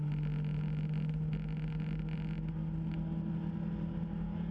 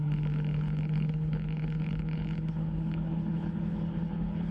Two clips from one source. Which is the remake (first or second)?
second